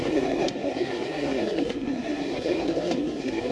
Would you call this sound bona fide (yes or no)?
no